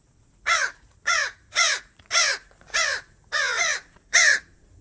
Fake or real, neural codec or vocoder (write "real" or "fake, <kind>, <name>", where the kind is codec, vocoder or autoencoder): fake, vocoder, Vocos